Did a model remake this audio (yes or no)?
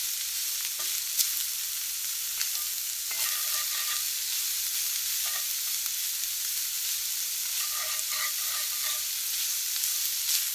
no